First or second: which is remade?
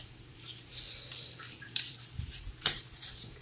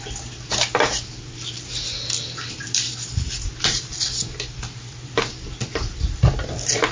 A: first